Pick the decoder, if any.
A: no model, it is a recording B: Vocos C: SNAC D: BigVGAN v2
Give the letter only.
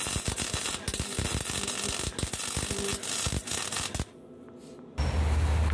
A